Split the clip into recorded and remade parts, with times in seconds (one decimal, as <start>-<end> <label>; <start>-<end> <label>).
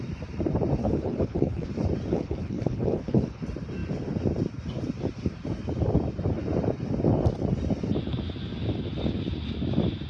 0.0-0.8 recorded; 0.8-1.7 remade; 1.7-2.1 recorded; 2.1-3.4 remade; 3.4-10.1 recorded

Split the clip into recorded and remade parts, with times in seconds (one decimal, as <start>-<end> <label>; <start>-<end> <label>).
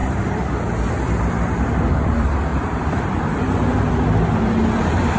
0.0-0.5 remade; 0.5-2.5 recorded; 2.5-3.1 remade; 3.1-5.2 recorded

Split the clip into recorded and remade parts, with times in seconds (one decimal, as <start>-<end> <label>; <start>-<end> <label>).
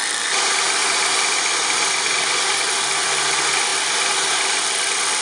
0.0-5.2 recorded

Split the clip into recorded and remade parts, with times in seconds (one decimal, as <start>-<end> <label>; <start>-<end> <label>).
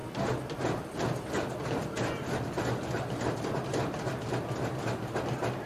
0.0-5.7 recorded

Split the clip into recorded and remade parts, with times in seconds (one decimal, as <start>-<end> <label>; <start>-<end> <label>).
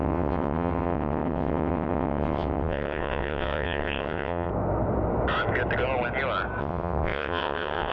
0.0-4.5 remade; 4.5-6.6 recorded; 6.6-7.9 remade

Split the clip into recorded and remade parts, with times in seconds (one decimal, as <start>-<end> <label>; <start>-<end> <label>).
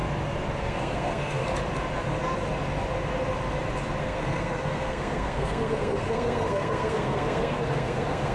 0.0-0.6 recorded; 0.6-1.4 remade; 1.4-4.0 recorded; 4.0-8.3 remade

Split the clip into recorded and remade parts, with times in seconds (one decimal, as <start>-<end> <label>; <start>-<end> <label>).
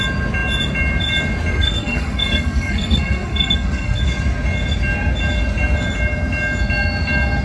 0.0-1.5 recorded; 1.5-4.0 remade; 4.0-7.4 recorded